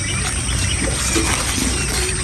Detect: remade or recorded recorded